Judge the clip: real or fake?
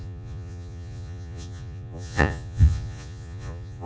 fake